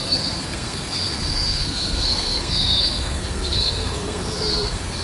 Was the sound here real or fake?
fake